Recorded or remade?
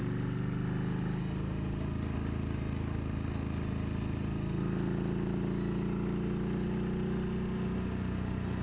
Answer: recorded